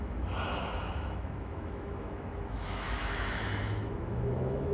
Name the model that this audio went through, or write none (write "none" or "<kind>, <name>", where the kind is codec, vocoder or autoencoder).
autoencoder, DAC-VAE